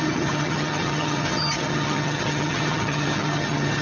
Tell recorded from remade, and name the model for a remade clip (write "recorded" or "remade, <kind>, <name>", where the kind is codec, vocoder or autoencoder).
remade, vocoder, HiFi-GAN